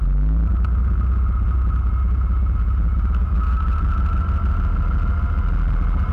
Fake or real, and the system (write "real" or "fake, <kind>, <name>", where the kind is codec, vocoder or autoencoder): real